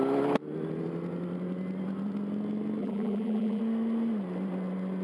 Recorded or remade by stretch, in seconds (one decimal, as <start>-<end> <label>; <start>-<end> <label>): 0.0-2.8 recorded; 2.8-3.6 remade; 3.6-5.0 recorded